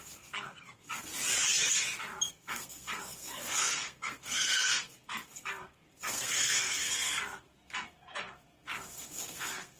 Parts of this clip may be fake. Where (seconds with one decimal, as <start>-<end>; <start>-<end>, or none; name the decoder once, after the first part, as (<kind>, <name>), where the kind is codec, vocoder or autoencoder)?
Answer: 0.0-1.1 (codec, SNAC); 2.3-9.8